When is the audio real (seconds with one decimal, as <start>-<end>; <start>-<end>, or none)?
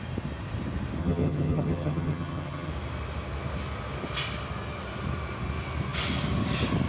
0.0-1.0; 2.7-6.9